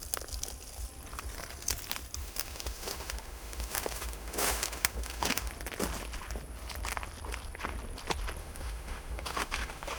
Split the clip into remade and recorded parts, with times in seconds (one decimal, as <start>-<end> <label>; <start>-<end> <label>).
0.0-2.2 recorded; 2.2-5.5 remade; 5.5-8.4 recorded; 8.4-10.0 remade

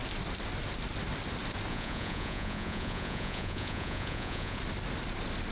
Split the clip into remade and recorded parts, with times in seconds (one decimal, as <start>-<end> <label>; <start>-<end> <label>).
0.0-1.7 recorded; 1.7-4.6 remade; 4.6-5.5 recorded

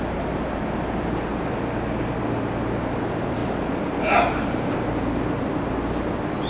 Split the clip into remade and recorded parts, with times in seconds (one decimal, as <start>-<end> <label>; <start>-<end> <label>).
0.0-6.5 recorded

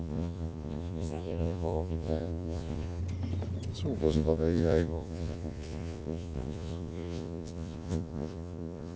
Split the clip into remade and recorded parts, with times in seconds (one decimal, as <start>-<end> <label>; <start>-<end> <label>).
0.0-3.0 remade; 3.0-4.0 recorded; 4.0-9.0 remade

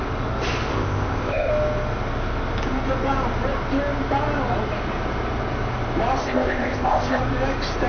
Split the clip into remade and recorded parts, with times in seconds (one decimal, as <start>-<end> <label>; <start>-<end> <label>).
0.0-0.7 recorded; 0.7-1.5 remade; 1.5-6.2 recorded; 6.2-7.2 remade; 7.2-7.9 recorded